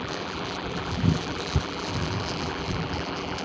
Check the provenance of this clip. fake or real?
fake